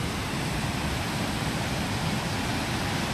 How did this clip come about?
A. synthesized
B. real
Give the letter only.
B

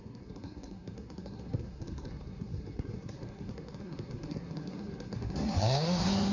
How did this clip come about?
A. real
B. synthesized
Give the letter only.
B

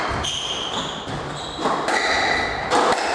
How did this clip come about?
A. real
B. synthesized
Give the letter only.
A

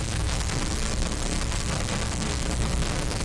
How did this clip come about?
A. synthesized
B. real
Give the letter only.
A